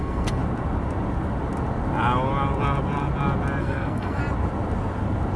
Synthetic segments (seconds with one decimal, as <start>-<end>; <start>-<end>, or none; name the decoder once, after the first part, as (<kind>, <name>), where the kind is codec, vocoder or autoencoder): 0.0-0.4 (codec, SNAC); 3.6-4.2